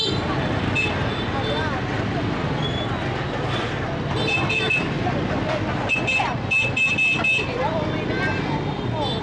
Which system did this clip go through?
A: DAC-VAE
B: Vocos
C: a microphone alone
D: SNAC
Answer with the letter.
C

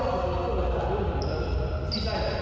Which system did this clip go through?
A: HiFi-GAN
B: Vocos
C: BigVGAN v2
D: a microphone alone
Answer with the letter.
D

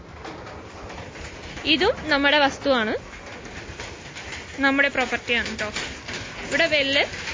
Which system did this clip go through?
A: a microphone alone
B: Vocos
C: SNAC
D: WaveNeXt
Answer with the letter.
A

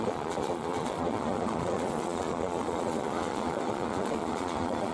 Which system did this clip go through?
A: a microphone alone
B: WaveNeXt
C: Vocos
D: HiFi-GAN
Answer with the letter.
C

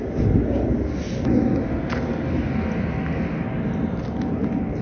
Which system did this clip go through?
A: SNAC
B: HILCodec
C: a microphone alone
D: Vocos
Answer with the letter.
C